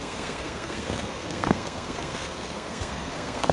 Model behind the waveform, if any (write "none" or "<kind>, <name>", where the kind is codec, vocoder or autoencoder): codec, SNAC